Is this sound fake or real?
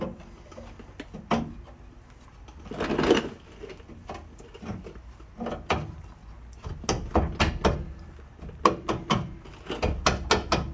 real